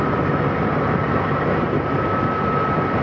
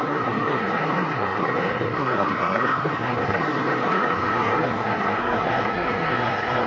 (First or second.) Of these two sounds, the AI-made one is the second